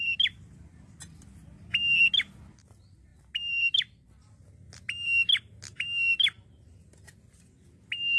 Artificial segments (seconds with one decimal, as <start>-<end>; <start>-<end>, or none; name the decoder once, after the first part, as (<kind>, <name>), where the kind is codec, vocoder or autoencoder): none